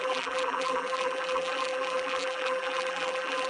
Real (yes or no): no